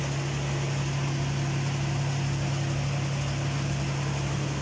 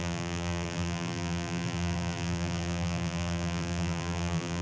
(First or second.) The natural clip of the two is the first